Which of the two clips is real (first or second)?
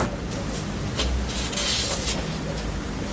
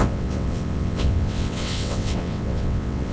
first